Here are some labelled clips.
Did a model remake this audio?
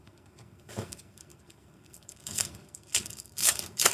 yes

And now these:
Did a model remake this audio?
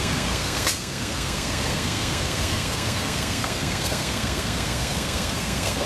yes